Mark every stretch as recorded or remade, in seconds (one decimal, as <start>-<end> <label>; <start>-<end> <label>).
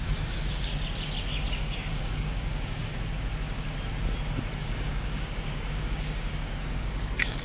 0.0-0.7 remade; 0.7-1.9 recorded; 1.9-2.9 remade; 2.9-4.6 recorded; 4.6-7.4 remade